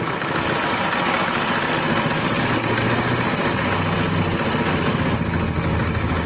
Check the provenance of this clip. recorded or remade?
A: recorded